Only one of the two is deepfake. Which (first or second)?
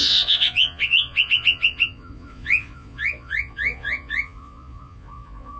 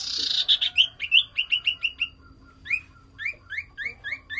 first